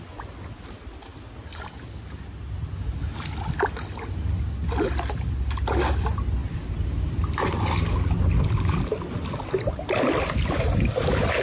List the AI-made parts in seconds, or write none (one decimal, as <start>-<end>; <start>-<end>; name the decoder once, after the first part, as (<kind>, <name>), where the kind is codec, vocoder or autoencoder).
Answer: none